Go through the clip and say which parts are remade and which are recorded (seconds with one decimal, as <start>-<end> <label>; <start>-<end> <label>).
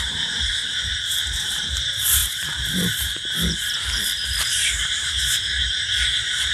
0.0-6.5 remade